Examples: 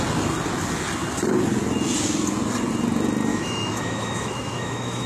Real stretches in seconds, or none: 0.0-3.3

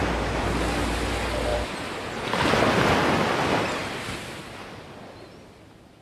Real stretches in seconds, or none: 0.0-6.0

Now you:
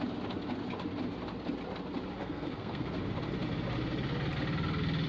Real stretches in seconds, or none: 0.0-2.2; 3.0-5.1

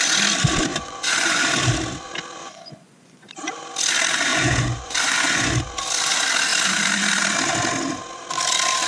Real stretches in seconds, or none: 0.0-0.7; 1.5-2.4; 3.3-4.3; 5.5-8.9

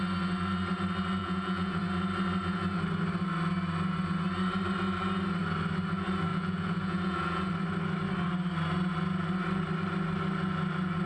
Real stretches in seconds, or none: 0.0-1.2; 1.8-6.3; 7.5-11.1

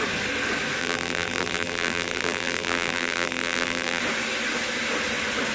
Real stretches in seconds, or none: 0.0-0.8; 4.0-5.5

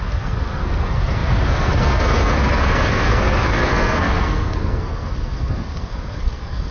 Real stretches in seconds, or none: none